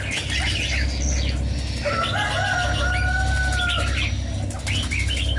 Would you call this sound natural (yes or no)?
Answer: yes